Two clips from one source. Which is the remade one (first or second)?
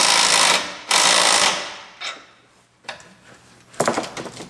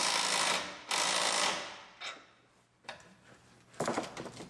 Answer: first